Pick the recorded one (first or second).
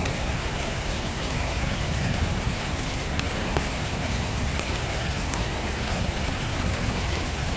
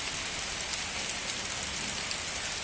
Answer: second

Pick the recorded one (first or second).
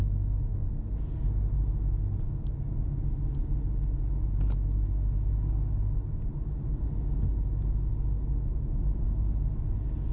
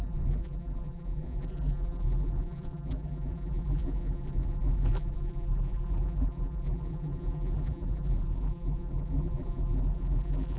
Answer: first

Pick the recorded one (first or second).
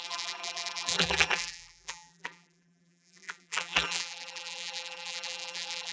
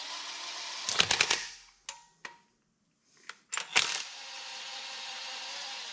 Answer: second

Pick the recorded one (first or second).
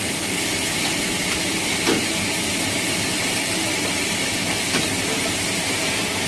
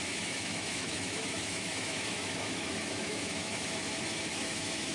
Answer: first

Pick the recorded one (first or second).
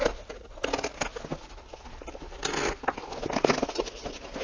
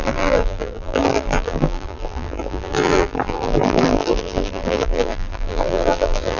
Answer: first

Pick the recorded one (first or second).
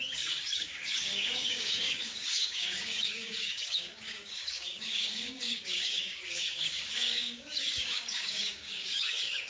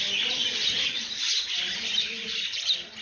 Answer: second